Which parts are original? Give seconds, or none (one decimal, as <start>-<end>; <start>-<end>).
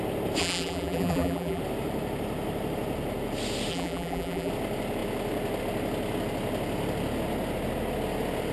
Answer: 0.0-0.4; 1.6-3.7; 4.5-8.5